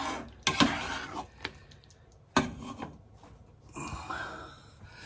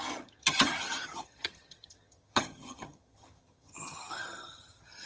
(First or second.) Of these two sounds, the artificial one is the second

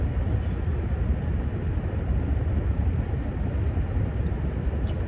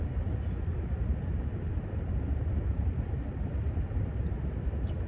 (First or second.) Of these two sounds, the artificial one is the second